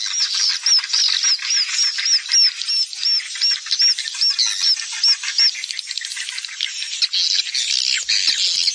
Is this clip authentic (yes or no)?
yes